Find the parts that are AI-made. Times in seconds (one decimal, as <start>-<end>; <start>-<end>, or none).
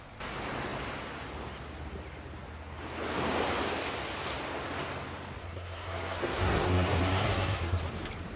5.4-7.8